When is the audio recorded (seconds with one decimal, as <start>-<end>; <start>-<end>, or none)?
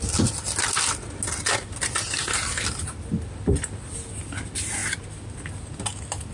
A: 0.0-6.3